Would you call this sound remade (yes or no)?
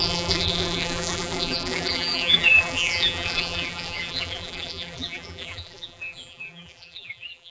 yes